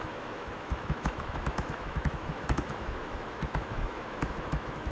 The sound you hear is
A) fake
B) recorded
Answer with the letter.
A